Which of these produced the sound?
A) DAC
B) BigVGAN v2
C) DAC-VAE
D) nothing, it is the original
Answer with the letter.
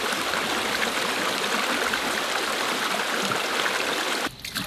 D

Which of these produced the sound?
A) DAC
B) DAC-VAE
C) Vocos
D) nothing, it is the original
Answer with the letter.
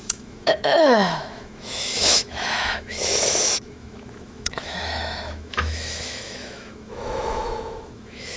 B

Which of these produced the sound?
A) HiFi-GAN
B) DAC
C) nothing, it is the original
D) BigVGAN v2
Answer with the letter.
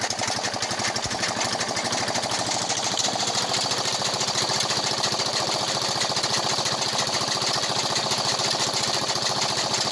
C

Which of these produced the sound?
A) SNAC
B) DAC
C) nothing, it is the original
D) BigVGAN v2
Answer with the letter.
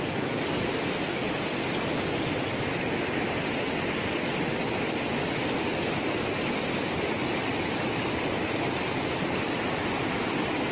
C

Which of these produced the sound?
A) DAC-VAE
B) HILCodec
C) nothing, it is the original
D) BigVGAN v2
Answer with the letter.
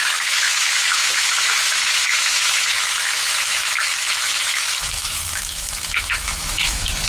A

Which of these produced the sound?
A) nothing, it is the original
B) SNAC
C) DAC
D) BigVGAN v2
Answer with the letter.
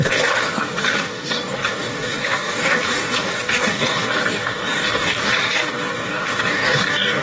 C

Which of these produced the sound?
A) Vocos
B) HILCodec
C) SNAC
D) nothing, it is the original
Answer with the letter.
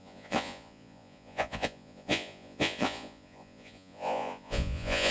A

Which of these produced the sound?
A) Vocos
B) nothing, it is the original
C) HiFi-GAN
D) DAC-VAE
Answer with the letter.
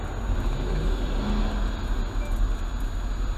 B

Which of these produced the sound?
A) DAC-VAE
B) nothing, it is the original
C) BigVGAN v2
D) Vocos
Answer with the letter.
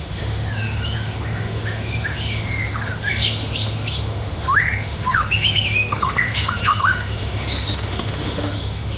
A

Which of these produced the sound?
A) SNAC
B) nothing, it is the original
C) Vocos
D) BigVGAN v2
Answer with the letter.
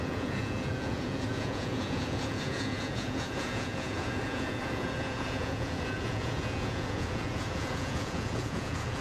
C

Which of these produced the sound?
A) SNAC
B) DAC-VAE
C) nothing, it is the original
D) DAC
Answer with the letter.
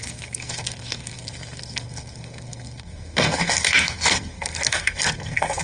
A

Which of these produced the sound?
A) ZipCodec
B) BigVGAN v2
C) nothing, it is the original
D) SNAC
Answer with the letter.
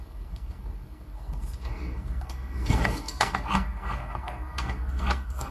D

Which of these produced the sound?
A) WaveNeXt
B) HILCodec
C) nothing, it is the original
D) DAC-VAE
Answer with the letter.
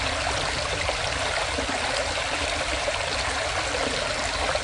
C